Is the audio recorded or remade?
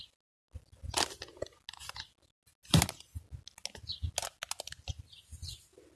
recorded